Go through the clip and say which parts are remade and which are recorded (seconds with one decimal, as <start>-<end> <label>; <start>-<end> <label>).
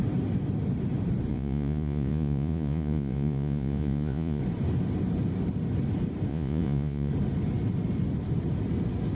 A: 0.0-1.3 recorded; 1.3-4.4 remade; 4.4-6.3 recorded; 6.3-7.1 remade; 7.1-9.1 recorded